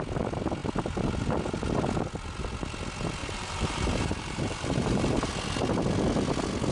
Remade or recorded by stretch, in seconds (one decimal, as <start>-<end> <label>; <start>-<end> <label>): 0.0-3.2 recorded; 3.2-5.3 remade; 5.3-6.7 recorded